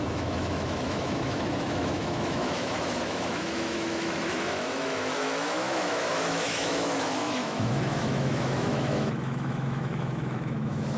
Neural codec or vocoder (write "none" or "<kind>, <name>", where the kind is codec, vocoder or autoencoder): autoencoder, DAC-VAE